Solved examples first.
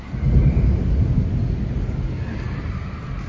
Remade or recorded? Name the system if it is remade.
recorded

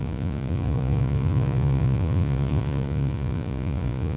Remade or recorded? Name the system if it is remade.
remade, vocoder, Vocos